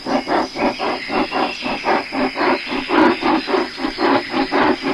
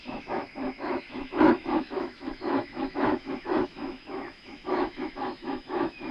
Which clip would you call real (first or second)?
first